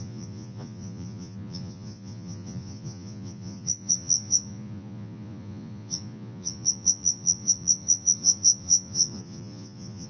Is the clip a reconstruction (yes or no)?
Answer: yes